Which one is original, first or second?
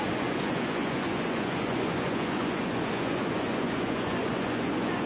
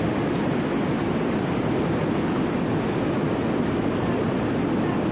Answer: second